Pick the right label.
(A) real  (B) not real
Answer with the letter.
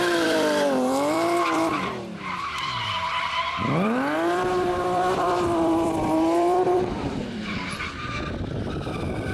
B